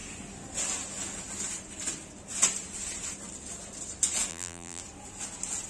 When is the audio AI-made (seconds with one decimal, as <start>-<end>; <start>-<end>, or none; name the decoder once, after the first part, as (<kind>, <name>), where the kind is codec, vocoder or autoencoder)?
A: 4.3-4.8 (vocoder, BigVGAN v2)